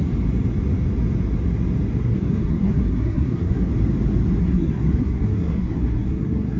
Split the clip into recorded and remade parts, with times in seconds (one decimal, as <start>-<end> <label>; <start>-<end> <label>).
0.0-2.0 recorded; 2.0-3.7 remade; 3.7-4.4 recorded; 4.4-6.6 remade